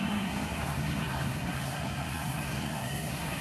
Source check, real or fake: fake